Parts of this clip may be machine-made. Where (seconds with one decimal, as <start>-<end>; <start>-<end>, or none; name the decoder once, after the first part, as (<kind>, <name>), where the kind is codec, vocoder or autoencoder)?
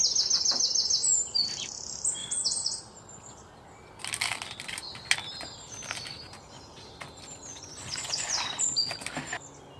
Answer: 2.2-2.8 (vocoder, Vocos); 7.5-8.4